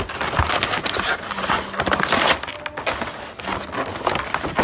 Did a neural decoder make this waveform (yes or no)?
no